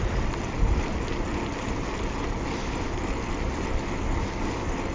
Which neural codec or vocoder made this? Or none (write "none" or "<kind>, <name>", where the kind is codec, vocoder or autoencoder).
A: none